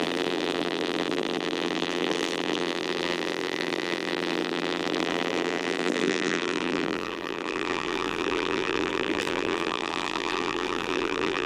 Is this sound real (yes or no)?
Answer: no